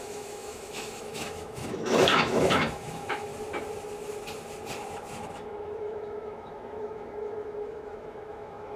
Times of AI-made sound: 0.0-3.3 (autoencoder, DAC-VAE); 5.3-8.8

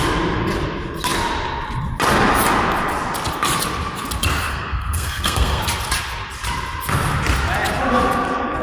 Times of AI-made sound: 4.5-5.6 (codec, SNAC)

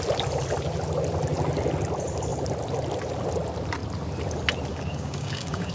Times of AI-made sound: 4.7-5.7 (codec, DAC)

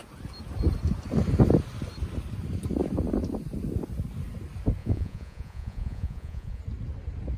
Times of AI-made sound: 4.8-6.6 (vocoder, Vocos)

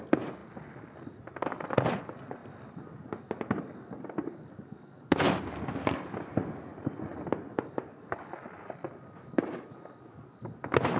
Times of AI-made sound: none

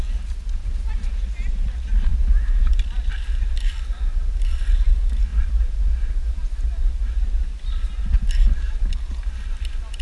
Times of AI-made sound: none